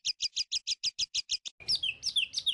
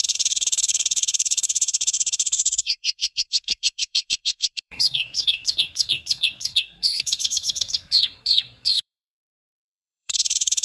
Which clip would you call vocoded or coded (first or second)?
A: second